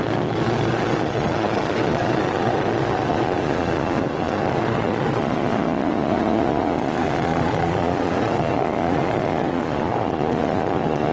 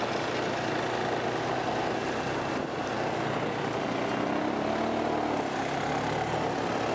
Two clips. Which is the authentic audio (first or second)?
second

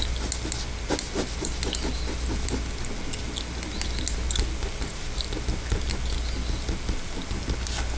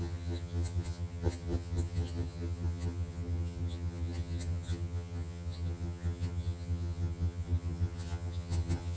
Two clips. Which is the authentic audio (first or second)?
first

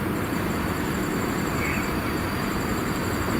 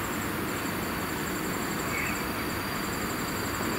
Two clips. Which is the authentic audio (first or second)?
second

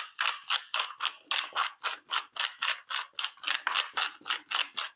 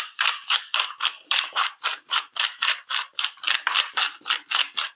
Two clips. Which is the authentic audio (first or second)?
first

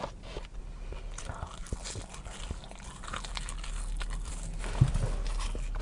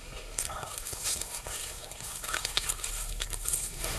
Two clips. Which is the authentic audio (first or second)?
first